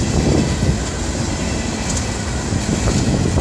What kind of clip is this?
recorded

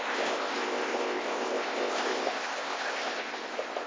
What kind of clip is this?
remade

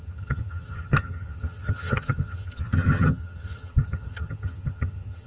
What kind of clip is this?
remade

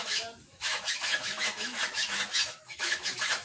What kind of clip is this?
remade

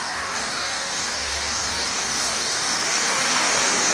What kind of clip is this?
remade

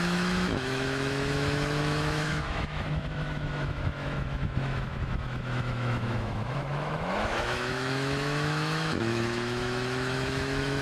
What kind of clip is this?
remade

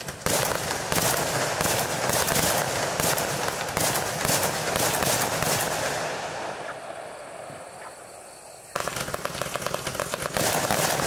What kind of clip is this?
recorded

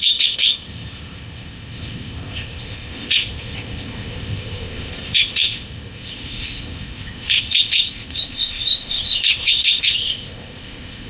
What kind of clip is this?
remade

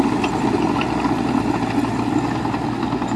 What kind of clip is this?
recorded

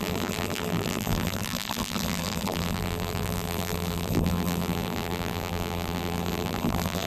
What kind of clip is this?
remade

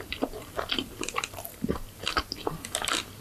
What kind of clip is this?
remade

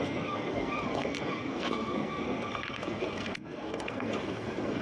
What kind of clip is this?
remade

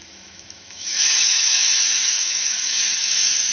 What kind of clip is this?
remade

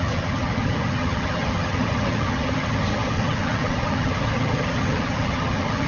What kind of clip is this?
remade